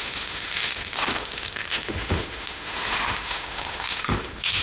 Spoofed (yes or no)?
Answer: yes